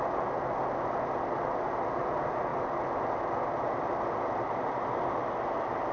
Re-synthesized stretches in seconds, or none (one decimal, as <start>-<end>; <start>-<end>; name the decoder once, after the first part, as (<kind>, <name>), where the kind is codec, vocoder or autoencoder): none